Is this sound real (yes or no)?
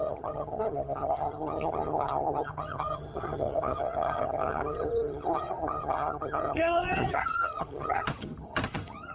no